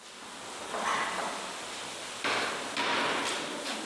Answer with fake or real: real